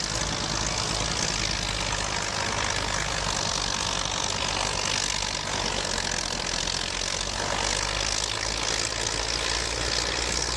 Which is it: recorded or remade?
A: recorded